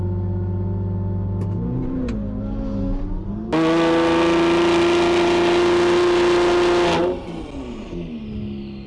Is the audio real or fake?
real